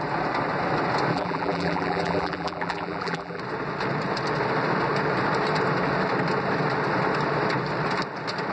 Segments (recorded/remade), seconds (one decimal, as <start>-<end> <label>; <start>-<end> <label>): 0.0-1.1 recorded; 1.1-3.4 remade; 3.4-8.5 recorded